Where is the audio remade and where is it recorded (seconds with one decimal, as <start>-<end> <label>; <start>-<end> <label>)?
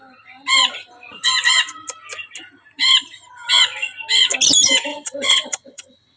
0.0-4.9 recorded; 4.9-6.2 remade